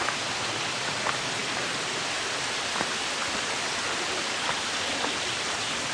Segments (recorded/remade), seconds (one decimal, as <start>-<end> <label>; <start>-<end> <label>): 0.0-5.9 recorded